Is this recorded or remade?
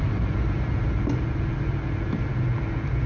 recorded